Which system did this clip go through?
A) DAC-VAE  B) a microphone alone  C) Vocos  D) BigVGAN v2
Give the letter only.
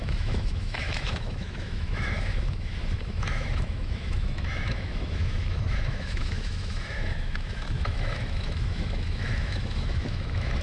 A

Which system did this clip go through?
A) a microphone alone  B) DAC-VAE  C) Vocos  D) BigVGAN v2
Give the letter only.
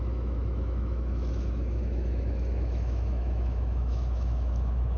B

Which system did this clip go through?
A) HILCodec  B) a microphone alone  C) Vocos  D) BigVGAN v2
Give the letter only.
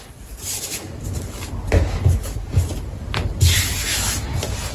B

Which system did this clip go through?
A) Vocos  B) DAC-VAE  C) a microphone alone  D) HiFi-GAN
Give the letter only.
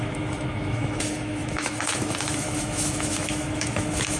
B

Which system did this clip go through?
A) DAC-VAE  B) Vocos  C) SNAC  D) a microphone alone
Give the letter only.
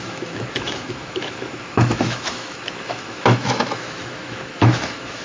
A